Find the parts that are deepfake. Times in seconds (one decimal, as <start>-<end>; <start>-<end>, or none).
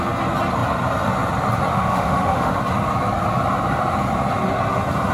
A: 1.7-2.6